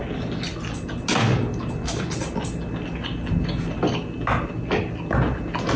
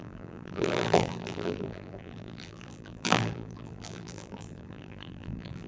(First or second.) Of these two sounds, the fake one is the second